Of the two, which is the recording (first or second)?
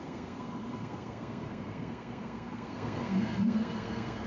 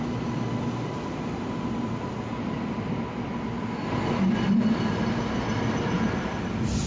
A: second